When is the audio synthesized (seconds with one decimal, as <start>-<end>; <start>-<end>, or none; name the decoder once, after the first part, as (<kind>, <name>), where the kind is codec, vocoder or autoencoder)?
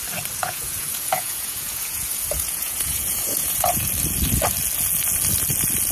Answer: 0.4-3.9 (vocoder, Vocos)